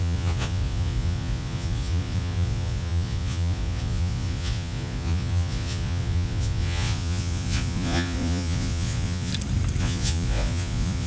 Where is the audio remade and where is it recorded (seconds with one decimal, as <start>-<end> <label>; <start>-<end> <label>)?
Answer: 0.0-9.3 remade; 9.3-9.8 recorded; 9.8-11.1 remade